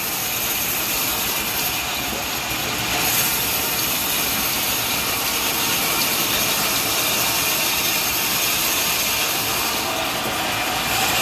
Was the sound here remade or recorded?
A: recorded